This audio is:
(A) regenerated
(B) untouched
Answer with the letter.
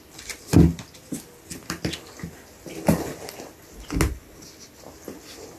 B